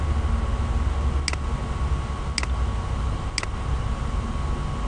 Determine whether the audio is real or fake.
real